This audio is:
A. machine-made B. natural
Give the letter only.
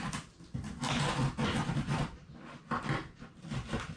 B